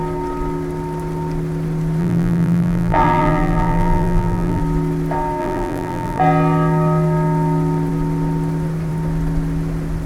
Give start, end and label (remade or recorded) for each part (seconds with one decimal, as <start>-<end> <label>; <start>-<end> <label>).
0.0-2.0 recorded; 2.0-4.6 remade; 4.6-5.4 recorded; 5.4-6.2 remade; 6.2-10.1 recorded